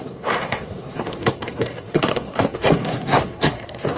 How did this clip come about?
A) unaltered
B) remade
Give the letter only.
B